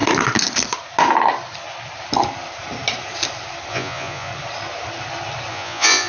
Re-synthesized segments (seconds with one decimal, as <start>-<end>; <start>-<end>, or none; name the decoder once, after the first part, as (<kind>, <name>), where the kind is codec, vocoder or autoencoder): 3.7-4.3 (vocoder, Vocos); 5.5-6.1